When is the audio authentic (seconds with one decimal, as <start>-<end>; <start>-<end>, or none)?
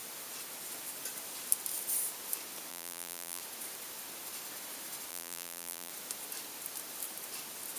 0.0-2.7; 3.4-5.1; 5.9-7.8